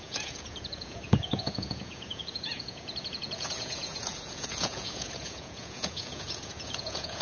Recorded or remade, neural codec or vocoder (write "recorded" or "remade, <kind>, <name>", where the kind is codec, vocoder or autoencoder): remade, vocoder, Vocos